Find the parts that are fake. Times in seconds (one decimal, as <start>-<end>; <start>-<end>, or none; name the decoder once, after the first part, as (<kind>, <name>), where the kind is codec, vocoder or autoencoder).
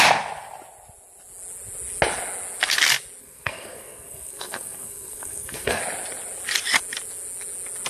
3.2-5.8 (codec, SNAC)